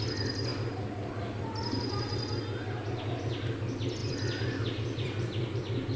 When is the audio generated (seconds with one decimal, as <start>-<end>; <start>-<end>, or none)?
4.0-5.6